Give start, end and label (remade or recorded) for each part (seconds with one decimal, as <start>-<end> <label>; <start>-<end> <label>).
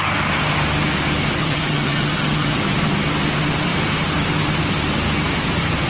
0.0-1.4 recorded; 1.4-2.6 remade; 2.6-5.9 recorded